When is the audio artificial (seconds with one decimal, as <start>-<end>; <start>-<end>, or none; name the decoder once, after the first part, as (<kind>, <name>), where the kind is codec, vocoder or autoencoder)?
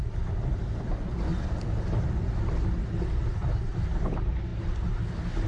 none